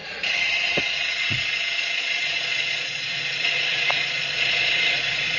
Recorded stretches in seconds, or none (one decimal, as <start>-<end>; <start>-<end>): 0.0-2.0